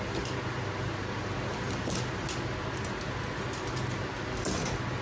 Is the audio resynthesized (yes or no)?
no